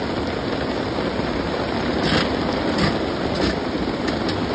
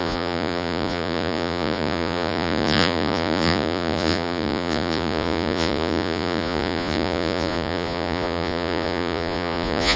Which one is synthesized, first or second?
second